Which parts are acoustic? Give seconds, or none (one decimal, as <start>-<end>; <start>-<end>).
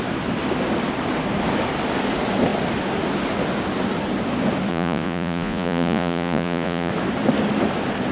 0.0-4.7; 6.9-8.1